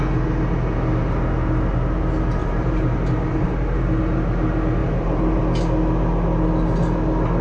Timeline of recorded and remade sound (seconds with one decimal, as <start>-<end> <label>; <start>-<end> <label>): 0.0-2.4 recorded; 2.4-4.0 remade; 4.0-4.8 recorded; 4.8-5.4 remade; 5.4-7.4 recorded

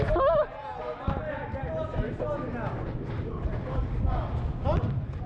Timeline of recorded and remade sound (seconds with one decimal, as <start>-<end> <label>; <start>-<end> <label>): 0.0-5.3 recorded

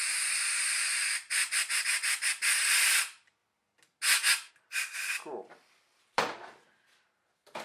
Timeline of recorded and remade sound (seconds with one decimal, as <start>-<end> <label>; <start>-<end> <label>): 0.0-7.6 recorded

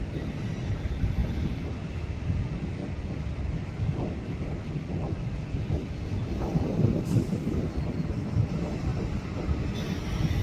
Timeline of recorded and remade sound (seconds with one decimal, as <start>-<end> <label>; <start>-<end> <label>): 0.0-2.8 recorded; 2.8-7.9 remade; 7.9-10.4 recorded

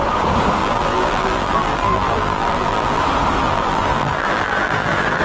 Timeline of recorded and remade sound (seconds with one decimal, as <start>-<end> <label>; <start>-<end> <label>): 0.0-0.6 recorded; 0.6-3.0 remade; 3.0-3.4 recorded; 3.4-5.2 remade